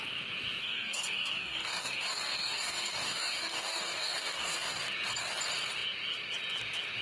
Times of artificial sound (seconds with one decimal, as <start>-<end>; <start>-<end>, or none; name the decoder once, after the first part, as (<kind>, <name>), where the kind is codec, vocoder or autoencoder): 0.6-4.8 (codec, DAC)